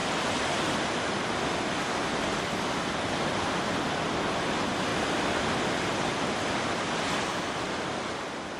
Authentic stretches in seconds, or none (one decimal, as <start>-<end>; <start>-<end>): 0.0-8.6